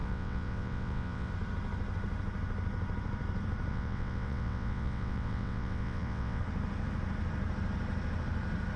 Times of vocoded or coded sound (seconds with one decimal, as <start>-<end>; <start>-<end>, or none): 0.0-1.3; 3.7-6.4